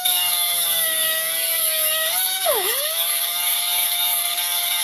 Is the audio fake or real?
fake